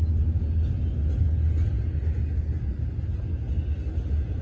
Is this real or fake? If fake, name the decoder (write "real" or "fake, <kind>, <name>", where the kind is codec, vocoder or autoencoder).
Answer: real